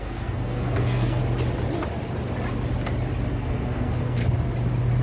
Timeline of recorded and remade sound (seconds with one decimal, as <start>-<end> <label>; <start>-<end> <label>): 0.0-1.2 remade; 1.2-3.3 recorded; 3.3-4.2 remade; 4.2-5.0 recorded